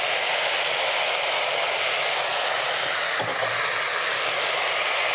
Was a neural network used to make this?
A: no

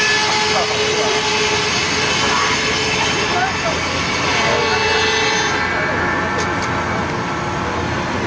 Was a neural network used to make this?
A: no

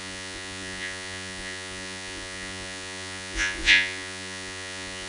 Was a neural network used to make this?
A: yes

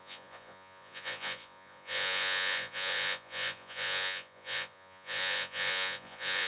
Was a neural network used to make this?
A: yes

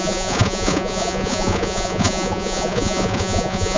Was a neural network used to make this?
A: yes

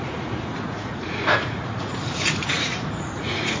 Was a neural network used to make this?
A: yes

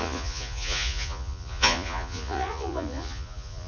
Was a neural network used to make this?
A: yes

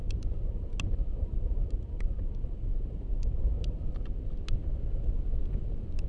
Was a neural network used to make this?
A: no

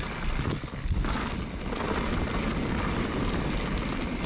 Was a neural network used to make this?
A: no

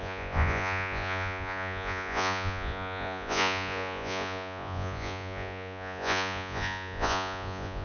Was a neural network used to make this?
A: yes